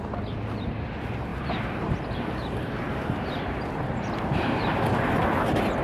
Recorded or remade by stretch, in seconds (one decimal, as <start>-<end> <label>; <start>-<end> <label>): 0.0-1.3 recorded; 1.3-4.8 remade; 4.8-5.8 recorded